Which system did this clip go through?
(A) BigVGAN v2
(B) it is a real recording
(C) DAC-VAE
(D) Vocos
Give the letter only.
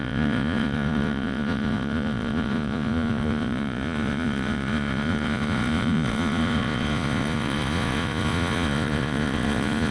D